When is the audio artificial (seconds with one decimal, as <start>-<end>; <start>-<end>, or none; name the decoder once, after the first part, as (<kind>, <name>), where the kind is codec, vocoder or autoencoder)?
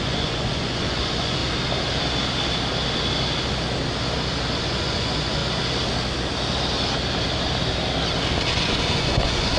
0.0-1.4 (vocoder, Vocos); 4.6-5.4; 8.5-9.6